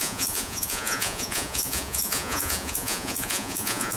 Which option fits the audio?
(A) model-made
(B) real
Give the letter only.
A